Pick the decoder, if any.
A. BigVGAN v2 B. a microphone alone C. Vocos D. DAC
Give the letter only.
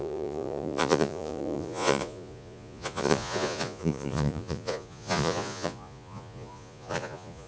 C